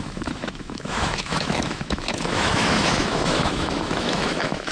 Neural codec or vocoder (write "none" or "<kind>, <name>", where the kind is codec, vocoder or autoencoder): autoencoder, DAC-VAE